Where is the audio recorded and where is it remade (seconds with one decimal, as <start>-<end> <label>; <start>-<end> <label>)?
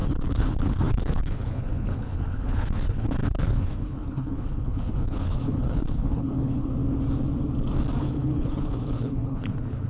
0.0-6.7 remade; 6.7-8.0 recorded; 8.0-9.9 remade